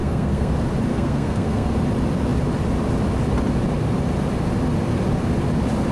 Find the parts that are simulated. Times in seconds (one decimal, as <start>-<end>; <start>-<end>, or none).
0.0-0.5; 0.9-1.7